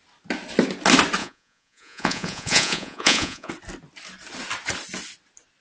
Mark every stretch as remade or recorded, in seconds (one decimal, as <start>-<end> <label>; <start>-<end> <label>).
0.0-1.2 recorded; 1.2-3.5 remade; 3.5-5.6 recorded